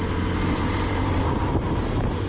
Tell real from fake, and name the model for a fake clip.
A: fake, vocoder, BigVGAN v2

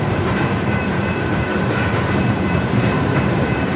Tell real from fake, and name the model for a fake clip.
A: fake, vocoder, BigVGAN v2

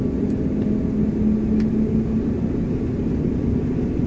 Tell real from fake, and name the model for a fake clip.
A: real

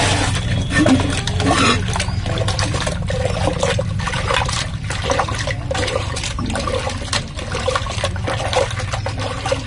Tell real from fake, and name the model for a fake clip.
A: real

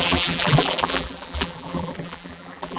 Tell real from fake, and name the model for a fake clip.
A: fake, vocoder, BigVGAN v2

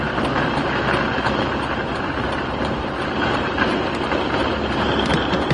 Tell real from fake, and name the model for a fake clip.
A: fake, vocoder, BigVGAN v2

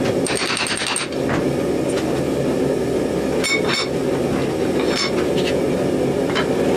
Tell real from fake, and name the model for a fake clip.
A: real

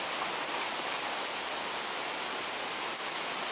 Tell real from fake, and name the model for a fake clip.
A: real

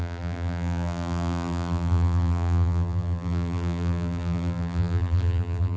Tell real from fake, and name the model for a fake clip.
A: fake, vocoder, BigVGAN v2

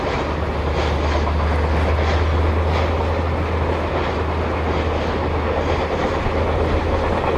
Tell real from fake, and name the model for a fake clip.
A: real